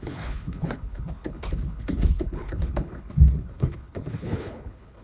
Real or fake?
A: fake